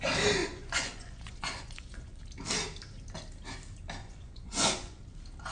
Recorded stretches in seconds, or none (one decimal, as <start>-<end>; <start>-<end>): 0.0-0.4; 2.2-4.0; 5.0-5.5